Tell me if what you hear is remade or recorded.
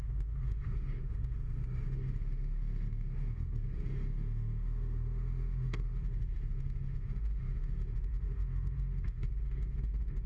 remade